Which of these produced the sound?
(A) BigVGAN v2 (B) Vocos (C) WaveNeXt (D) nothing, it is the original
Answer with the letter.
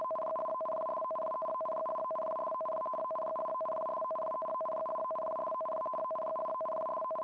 D